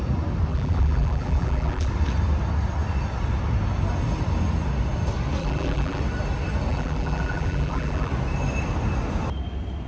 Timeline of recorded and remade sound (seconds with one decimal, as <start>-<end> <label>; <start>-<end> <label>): 0.0-0.5 recorded; 0.5-1.9 remade; 1.9-5.4 recorded; 5.4-6.0 remade; 6.0-6.7 recorded; 6.7-8.1 remade; 8.1-9.9 recorded